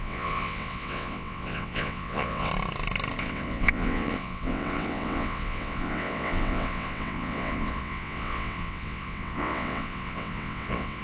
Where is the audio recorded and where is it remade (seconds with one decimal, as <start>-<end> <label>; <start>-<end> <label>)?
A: 0.0-2.5 remade; 2.5-3.2 recorded; 3.2-11.0 remade

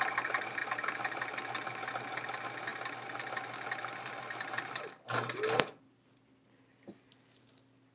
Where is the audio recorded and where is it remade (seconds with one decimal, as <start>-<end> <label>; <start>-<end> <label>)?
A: 0.0-7.9 recorded

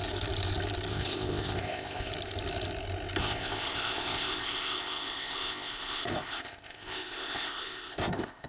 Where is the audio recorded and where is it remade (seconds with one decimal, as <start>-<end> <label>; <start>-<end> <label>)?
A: 0.0-0.9 recorded; 0.9-2.1 remade; 2.1-3.2 recorded; 3.2-8.5 remade

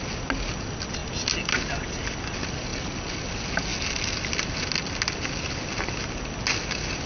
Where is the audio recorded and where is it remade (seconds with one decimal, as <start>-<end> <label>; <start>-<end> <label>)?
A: 0.0-7.1 recorded

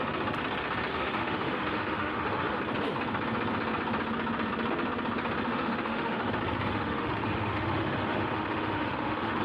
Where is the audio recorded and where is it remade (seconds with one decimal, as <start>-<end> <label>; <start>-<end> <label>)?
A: 0.0-0.9 recorded; 0.9-2.6 remade; 2.6-5.5 recorded; 5.5-6.3 remade; 6.3-6.7 recorded; 6.7-9.4 remade

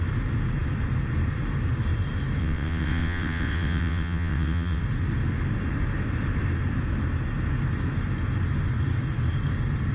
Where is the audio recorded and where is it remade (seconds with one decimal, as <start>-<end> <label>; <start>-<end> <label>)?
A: 0.0-2.4 recorded; 2.4-4.8 remade; 4.8-9.9 recorded